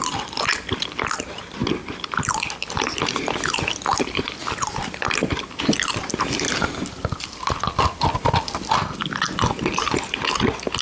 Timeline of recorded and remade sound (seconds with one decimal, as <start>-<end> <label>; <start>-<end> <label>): 0.0-1.6 remade; 1.6-3.5 recorded; 3.5-10.8 remade